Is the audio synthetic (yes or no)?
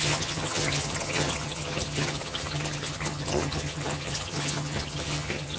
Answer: yes